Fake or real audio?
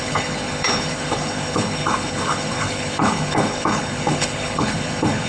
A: fake